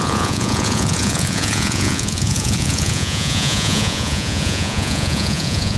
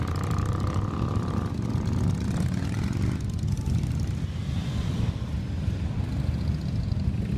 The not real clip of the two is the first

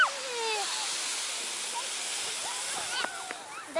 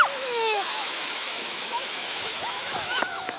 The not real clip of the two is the second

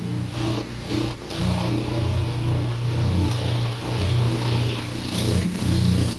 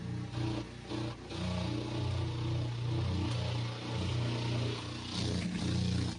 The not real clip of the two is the first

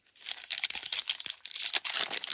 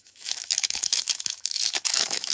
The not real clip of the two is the second